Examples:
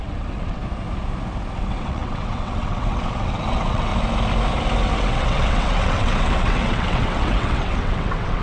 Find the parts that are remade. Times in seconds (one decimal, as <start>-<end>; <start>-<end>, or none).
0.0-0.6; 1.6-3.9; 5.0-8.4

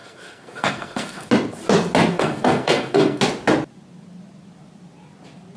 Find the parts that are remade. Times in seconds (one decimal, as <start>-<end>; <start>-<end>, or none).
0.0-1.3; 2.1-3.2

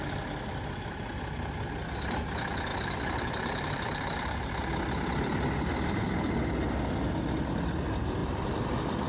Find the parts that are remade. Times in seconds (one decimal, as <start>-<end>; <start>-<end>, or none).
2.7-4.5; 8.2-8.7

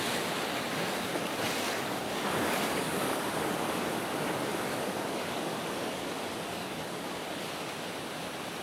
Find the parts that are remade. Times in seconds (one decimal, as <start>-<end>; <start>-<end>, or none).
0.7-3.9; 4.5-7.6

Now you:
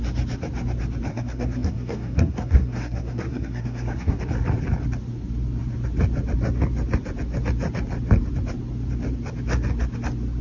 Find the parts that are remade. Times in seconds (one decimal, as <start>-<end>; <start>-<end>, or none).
1.1-4.2

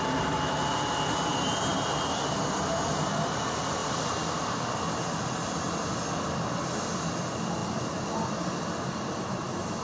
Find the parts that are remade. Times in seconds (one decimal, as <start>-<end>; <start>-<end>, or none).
none

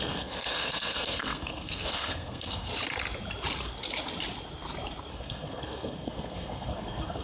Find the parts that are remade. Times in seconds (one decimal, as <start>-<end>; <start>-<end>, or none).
0.0-2.7; 5.1-7.2